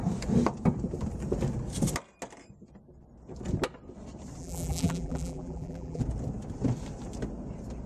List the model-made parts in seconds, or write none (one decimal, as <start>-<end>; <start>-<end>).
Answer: 4.4-6.0